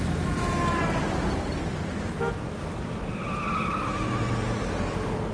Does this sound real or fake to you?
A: real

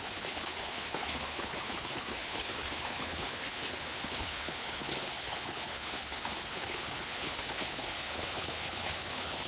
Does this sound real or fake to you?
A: fake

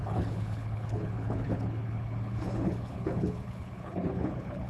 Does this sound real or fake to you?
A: fake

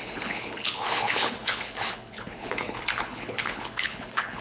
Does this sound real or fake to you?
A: fake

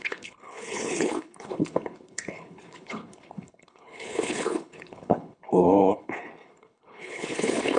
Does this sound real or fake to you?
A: fake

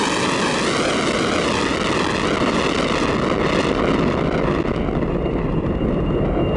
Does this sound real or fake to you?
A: real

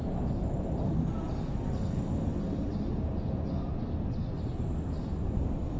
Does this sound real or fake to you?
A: real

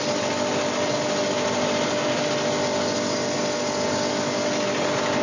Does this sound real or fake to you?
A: real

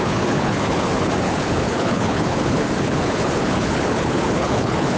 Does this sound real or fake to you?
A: fake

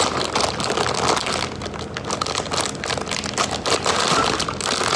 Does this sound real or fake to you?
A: real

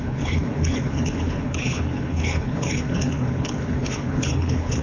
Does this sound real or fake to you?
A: fake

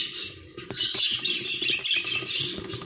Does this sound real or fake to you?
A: real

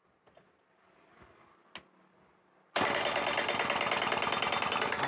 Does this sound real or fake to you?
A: real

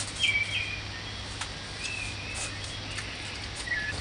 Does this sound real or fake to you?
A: real